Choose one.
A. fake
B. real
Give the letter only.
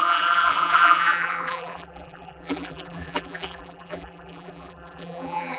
A